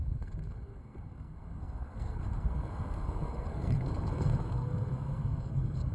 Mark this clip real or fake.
fake